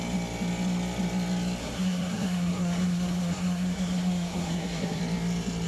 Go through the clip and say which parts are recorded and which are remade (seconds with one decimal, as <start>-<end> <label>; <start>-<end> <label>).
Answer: 0.0-1.6 recorded; 1.6-5.0 remade; 5.0-5.7 recorded